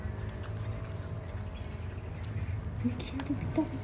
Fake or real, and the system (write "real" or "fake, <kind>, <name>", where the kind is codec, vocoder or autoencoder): real